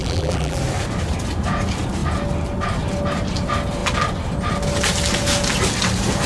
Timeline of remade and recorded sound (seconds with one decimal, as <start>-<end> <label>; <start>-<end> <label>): 0.0-0.6 remade; 0.6-6.3 recorded